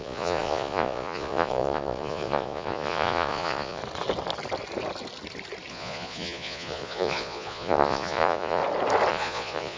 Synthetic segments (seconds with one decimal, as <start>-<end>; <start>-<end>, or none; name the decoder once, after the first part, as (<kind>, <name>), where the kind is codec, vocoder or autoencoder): 0.0-3.8 (vocoder, Vocos); 5.7-8.6; 9.1-9.8